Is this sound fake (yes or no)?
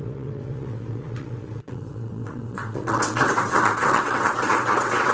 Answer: yes